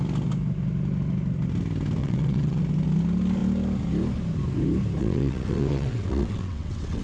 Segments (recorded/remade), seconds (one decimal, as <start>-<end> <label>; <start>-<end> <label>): 0.0-2.0 recorded; 2.0-2.6 remade; 2.6-5.0 recorded; 5.0-7.0 remade